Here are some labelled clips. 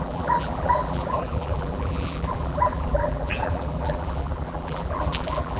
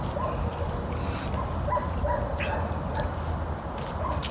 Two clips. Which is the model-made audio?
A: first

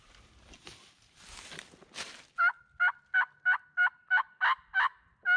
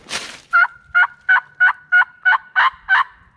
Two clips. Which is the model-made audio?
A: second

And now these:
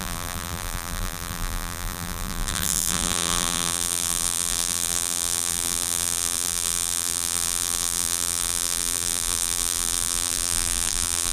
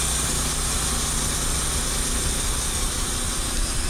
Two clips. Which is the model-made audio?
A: first